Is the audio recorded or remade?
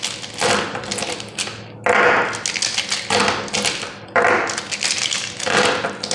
recorded